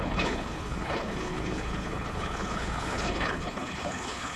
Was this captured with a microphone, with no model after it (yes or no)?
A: no